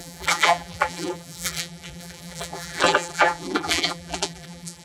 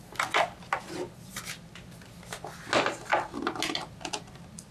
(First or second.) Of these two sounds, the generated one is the first